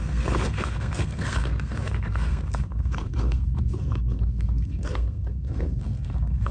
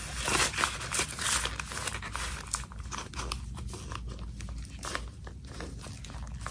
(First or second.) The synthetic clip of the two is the first